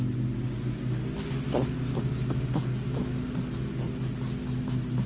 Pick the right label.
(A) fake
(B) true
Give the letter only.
B